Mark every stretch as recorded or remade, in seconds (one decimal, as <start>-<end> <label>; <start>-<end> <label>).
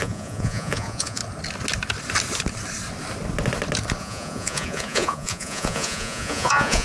0.0-1.2 remade; 1.2-4.0 recorded; 4.0-6.8 remade